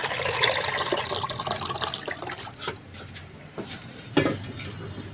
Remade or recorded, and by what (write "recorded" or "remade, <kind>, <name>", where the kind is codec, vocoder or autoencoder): recorded